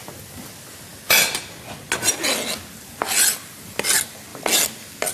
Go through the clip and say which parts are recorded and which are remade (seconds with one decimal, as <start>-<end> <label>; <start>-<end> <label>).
0.0-5.1 recorded